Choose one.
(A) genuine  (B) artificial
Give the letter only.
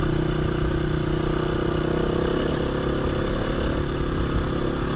A